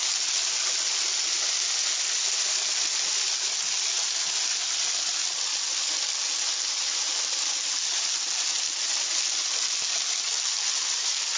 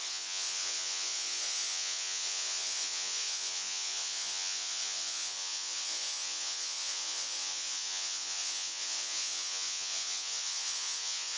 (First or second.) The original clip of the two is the first